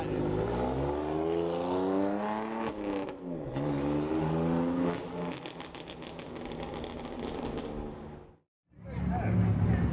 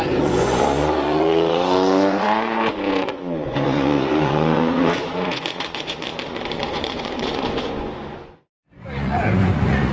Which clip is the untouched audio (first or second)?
first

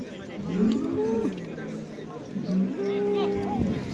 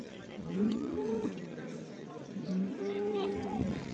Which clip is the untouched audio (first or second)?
first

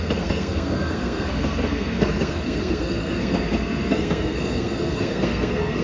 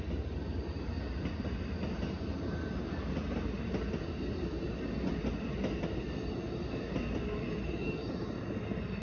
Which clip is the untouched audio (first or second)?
second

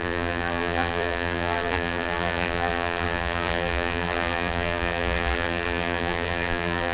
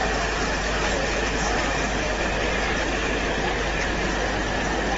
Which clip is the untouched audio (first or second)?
second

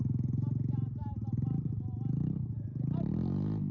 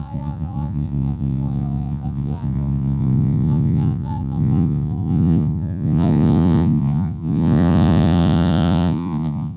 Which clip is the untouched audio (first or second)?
first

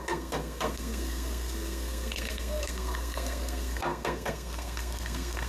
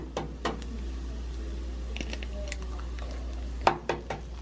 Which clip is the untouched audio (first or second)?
second